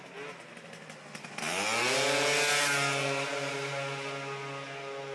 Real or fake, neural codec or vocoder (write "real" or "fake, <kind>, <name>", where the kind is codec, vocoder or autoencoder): real